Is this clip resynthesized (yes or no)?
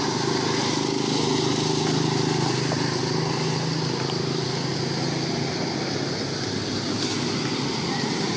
no